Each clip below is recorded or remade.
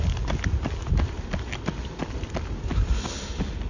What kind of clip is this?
recorded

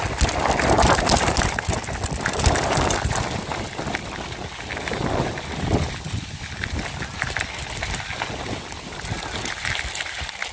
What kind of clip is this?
recorded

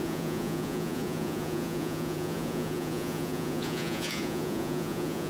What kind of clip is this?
remade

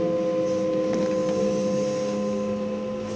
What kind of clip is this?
recorded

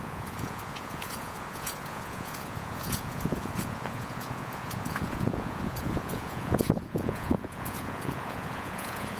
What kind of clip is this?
remade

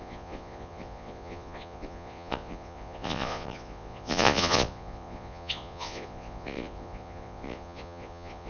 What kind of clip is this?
remade